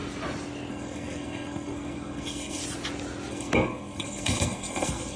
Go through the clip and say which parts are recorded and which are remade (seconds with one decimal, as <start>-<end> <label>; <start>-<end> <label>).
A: 0.0-0.7 recorded; 0.7-2.6 remade; 2.6-3.3 recorded; 3.3-5.2 remade